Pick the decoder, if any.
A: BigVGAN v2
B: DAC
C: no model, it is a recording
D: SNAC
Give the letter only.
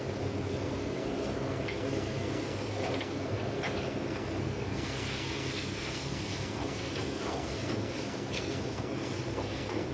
D